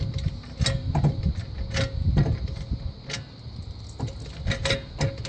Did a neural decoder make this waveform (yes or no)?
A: no